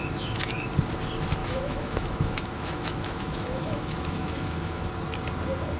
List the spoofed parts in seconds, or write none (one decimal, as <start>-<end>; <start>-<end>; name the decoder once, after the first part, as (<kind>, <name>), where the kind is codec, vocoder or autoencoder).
0.0-0.7 (autoencoder, DAC-VAE); 1.4-4.9